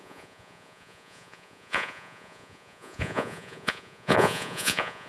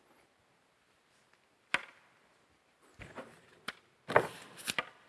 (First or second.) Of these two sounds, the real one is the second